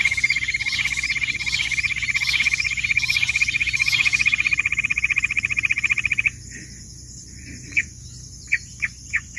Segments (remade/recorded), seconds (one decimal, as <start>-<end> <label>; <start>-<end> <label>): 0.0-9.4 remade